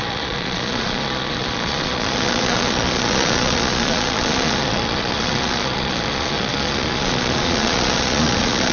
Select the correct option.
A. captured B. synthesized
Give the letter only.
B